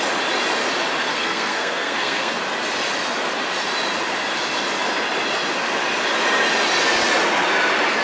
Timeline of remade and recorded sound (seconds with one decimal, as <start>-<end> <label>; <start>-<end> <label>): 0.0-1.1 recorded; 1.1-2.4 remade; 2.4-8.0 recorded